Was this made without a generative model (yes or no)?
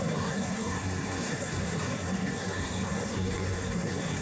no